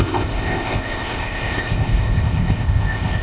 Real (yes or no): no